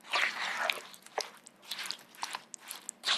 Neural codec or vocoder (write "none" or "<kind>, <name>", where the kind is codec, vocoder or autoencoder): none